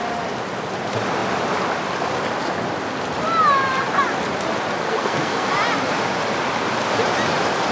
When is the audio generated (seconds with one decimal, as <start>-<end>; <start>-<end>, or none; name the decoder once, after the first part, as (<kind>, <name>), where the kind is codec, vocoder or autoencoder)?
4.8-5.5 (codec, SNAC)